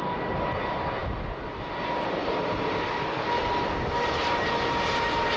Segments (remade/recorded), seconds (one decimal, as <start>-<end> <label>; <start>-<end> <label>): 0.0-3.4 recorded; 3.4-4.5 remade; 4.5-5.4 recorded